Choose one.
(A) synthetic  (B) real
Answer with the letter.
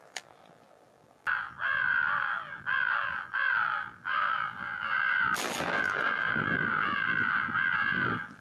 A